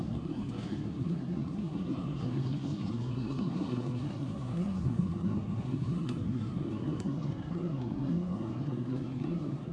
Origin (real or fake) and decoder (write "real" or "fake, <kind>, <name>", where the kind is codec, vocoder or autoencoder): fake, codec, SNAC